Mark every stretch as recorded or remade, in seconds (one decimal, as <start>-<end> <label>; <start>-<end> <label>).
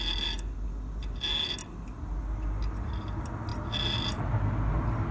0.0-5.1 recorded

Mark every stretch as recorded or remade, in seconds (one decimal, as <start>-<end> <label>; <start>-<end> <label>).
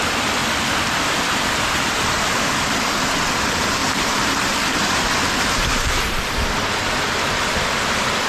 0.0-3.8 recorded; 3.8-6.3 remade; 6.3-8.3 recorded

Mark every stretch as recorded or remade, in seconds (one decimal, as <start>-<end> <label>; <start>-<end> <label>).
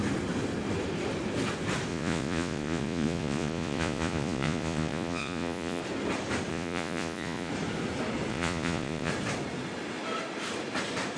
0.0-1.9 recorded; 1.9-5.8 remade; 5.8-6.5 recorded; 6.5-7.5 remade; 7.5-8.3 recorded; 8.3-9.1 remade; 9.1-11.2 recorded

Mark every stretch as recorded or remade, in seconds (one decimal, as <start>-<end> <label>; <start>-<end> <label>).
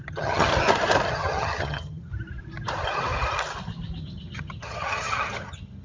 0.0-0.5 remade; 0.5-1.1 recorded; 1.1-2.1 remade; 2.1-4.0 recorded; 4.0-5.8 remade